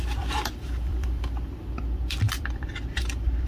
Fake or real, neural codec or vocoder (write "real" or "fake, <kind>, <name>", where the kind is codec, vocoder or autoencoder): fake, vocoder, BigVGAN v2